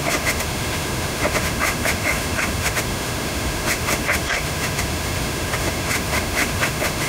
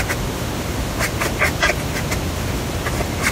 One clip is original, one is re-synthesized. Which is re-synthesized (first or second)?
first